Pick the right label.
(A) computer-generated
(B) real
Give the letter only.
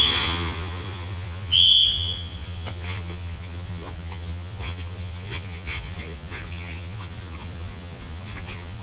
A